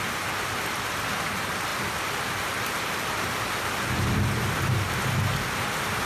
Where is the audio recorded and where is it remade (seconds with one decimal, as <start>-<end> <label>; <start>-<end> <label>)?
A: 0.0-6.1 recorded